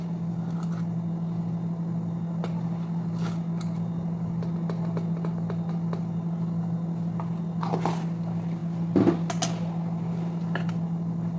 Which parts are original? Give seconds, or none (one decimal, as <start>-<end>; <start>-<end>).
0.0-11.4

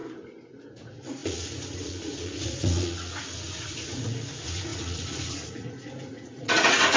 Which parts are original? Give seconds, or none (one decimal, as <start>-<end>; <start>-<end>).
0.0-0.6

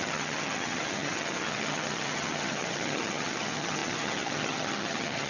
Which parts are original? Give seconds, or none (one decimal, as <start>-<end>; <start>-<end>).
none

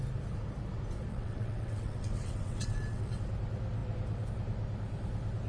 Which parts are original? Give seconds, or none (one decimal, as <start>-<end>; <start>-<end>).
0.0-1.1; 3.2-5.5

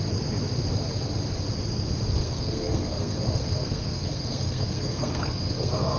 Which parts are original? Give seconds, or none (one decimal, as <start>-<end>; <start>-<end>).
0.0-2.2